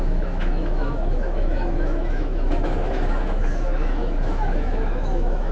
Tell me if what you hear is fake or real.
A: fake